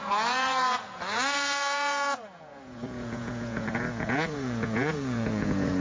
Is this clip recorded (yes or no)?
no